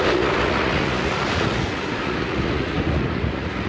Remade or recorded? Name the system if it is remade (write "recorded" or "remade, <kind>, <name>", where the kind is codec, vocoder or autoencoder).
remade, vocoder, Vocos